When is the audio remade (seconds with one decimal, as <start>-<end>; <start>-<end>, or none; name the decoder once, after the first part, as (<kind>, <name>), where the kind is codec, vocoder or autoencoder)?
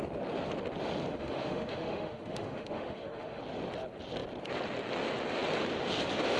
1.1-3.4 (autoencoder, DAC-VAE)